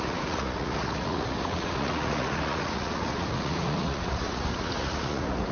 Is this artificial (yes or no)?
yes